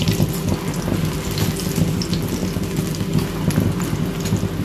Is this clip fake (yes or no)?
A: no